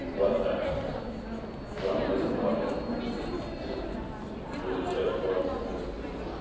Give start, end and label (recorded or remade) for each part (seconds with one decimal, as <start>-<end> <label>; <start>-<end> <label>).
0.0-6.4 recorded